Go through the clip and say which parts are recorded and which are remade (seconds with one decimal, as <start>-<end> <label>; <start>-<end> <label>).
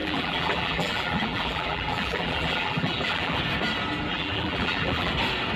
0.0-3.4 remade; 3.4-4.1 recorded; 4.1-5.1 remade; 5.1-5.6 recorded